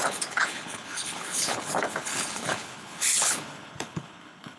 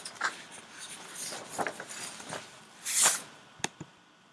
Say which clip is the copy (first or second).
first